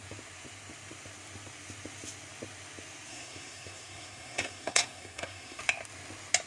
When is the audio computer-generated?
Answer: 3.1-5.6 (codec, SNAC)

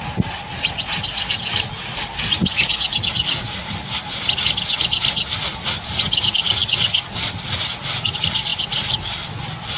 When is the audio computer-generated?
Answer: none

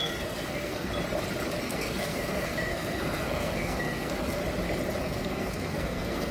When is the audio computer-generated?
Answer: 0.0-0.9 (codec, SNAC); 1.6-4.4; 5.0-6.3

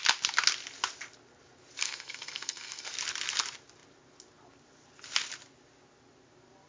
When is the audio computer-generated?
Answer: 1.8-2.9 (codec, SNAC)

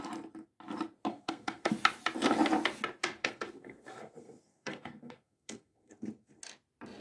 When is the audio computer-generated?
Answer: 1.1-1.7 (codec, SNAC); 3.2-6.4

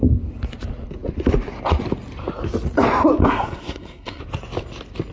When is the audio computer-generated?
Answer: 3.2-4.2 (codec, SNAC)

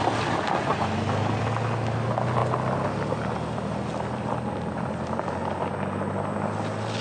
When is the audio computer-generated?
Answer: none